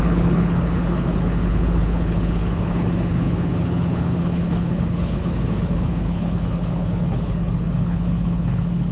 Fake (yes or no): yes